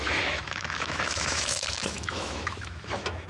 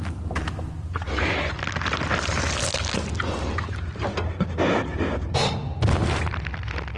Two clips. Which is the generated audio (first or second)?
first